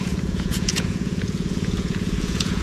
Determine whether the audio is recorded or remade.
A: remade